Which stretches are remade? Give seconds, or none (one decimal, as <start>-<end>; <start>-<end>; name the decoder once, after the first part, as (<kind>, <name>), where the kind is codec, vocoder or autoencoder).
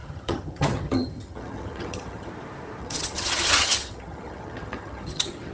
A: 0.0-2.3 (vocoder, HiFi-GAN); 2.8-5.5